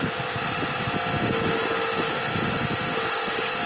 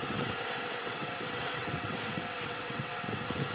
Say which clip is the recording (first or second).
first